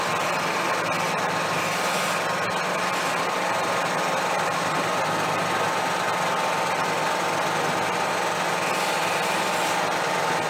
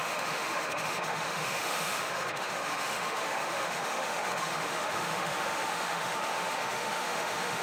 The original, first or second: first